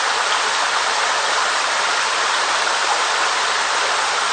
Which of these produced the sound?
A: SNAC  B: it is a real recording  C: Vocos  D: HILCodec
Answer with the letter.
B